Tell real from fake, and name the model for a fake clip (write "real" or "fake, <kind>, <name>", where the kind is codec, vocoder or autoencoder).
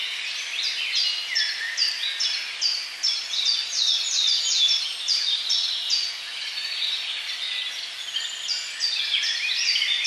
real